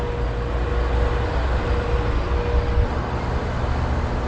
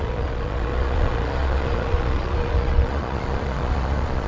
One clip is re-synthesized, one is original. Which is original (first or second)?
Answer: first